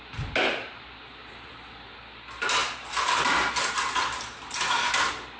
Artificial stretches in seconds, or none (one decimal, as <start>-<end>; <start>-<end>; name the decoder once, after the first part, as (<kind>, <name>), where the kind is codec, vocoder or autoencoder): none